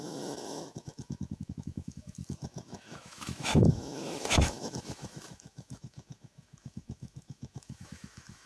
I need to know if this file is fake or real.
fake